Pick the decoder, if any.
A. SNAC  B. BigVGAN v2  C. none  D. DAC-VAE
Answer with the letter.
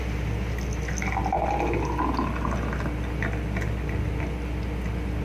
C